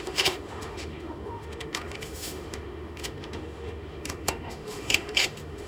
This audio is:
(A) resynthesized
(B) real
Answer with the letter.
A